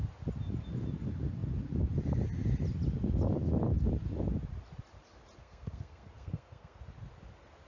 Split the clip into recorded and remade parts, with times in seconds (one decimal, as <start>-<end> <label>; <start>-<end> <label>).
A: 0.0-5.4 recorded; 5.4-6.8 remade; 6.8-7.7 recorded